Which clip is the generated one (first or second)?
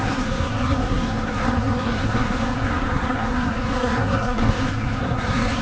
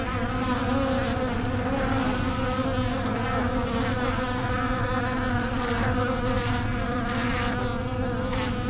first